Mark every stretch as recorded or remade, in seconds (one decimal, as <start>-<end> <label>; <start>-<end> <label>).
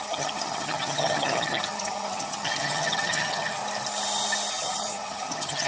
0.0-3.6 remade; 3.6-4.5 recorded; 4.5-5.7 remade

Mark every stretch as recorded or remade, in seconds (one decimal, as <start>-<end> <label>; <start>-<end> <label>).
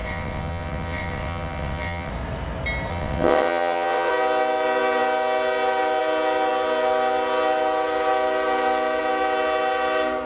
0.0-2.1 remade; 2.1-2.9 recorded; 2.9-4.1 remade; 4.1-10.3 recorded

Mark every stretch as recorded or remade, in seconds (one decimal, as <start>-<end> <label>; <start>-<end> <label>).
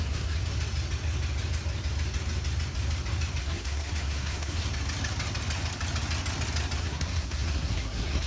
0.0-0.4 remade; 0.4-3.4 recorded; 3.4-4.6 remade; 4.6-6.8 recorded; 6.8-8.3 remade